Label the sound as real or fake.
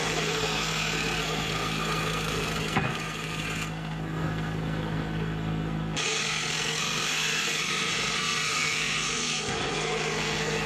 fake